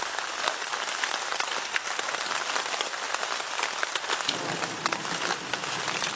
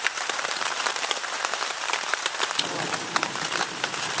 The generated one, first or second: second